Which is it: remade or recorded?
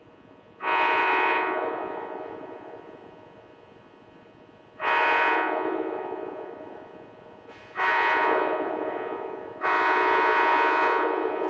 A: remade